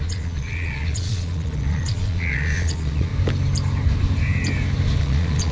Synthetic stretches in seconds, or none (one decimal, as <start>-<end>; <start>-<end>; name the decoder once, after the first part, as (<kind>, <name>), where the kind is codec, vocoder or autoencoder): 0.0-3.1 (vocoder, Vocos); 5.0-5.5